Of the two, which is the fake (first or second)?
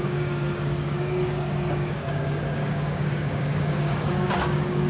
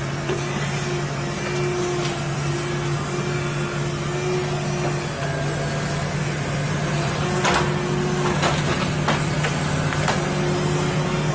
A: first